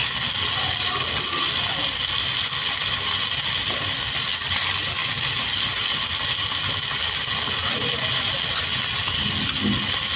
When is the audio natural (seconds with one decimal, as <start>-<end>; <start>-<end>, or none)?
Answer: 0.0-10.2